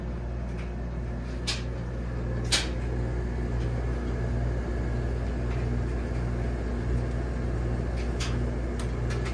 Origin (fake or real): real